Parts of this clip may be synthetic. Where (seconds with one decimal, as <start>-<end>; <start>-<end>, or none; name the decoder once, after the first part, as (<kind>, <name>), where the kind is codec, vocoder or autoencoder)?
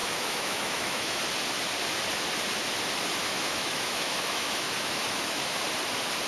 0.0-1.2 (autoencoder, DAC-VAE); 3.2-5.6